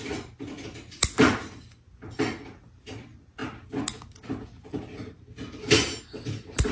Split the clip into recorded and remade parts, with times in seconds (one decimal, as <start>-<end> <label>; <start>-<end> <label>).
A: 0.0-6.7 recorded

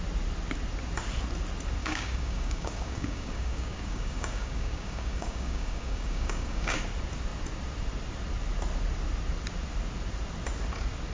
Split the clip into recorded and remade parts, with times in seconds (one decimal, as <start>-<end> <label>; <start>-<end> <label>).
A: 0.0-1.8 recorded; 1.8-6.8 remade; 6.8-11.1 recorded

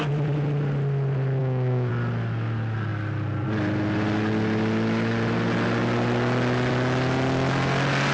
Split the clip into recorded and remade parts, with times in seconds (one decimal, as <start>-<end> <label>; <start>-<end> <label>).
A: 0.0-1.4 recorded; 1.4-1.9 remade; 1.9-8.1 recorded

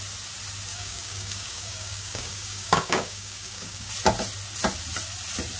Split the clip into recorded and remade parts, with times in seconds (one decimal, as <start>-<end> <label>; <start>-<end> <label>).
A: 0.0-0.7 recorded; 0.7-3.9 remade; 3.9-5.6 recorded

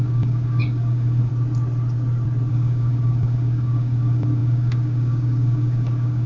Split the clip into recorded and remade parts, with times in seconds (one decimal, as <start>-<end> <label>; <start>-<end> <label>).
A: 0.0-1.3 remade; 1.3-2.5 recorded; 2.5-6.3 remade